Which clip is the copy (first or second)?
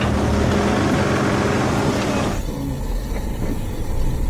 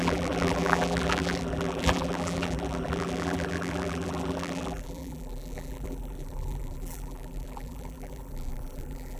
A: second